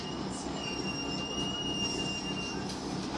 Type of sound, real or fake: real